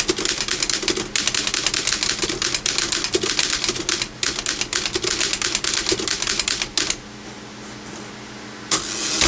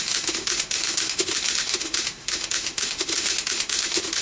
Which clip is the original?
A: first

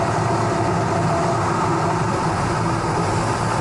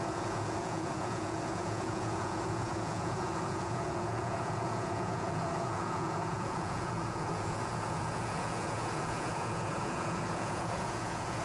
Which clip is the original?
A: first